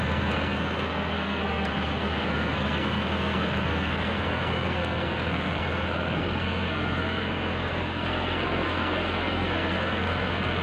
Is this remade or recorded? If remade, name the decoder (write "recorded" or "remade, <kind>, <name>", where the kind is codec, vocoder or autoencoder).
remade, codec, SNAC